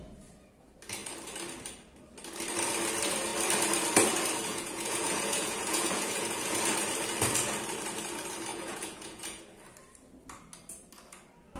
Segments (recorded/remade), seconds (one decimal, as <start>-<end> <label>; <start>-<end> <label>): 0.0-4.5 recorded; 4.5-6.6 remade; 6.6-8.5 recorded; 8.5-9.4 remade; 9.4-11.6 recorded